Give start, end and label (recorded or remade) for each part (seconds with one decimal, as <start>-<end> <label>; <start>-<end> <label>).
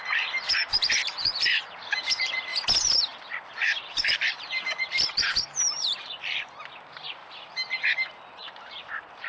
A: 0.0-9.3 remade